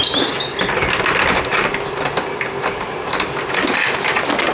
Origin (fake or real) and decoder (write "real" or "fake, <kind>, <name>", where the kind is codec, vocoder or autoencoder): real